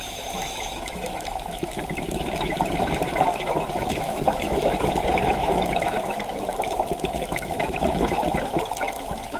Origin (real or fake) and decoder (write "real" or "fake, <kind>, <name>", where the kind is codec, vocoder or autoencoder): fake, autoencoder, DAC-VAE